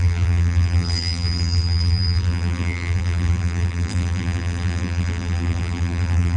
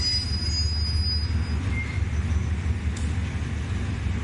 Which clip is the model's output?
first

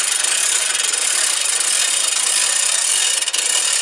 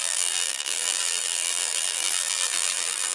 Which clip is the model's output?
second